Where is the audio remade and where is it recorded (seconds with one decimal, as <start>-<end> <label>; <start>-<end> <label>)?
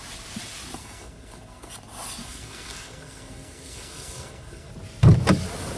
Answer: 0.0-0.8 recorded; 0.8-1.7 remade; 1.7-2.2 recorded; 2.2-4.7 remade; 4.7-5.8 recorded